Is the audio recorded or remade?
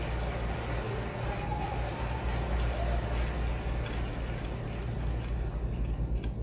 recorded